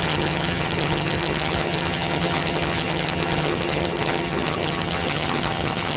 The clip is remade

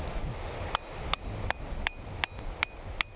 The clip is recorded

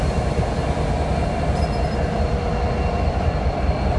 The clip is recorded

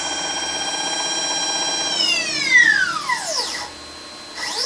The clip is recorded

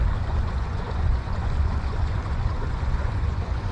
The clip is remade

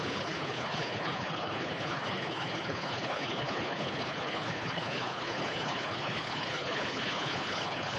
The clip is remade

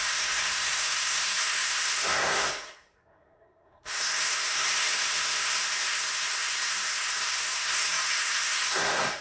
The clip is remade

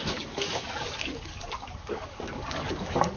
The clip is remade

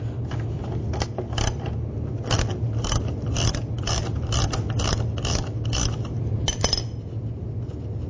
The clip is recorded